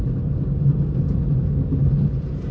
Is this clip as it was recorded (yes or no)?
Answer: yes